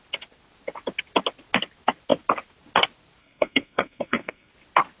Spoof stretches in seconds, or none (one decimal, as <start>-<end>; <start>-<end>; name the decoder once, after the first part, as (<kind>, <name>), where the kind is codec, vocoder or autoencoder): 3.2-4.5 (codec, SNAC)